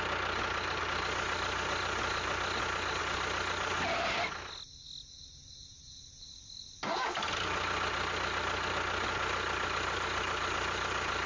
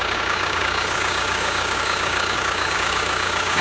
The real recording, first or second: first